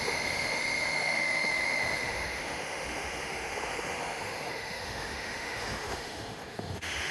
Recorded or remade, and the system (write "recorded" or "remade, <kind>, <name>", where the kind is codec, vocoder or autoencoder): remade, autoencoder, DAC-VAE